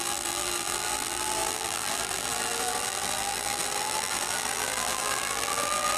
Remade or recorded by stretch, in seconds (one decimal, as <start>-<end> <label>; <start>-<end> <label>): 0.0-6.0 remade